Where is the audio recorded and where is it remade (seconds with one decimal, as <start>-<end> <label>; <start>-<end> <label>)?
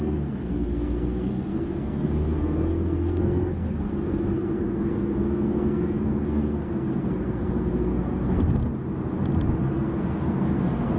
0.0-8.6 remade; 8.6-9.6 recorded; 9.6-11.0 remade